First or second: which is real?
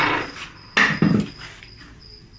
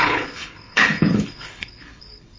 first